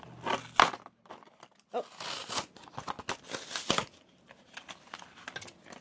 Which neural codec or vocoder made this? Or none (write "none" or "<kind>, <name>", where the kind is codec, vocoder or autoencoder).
none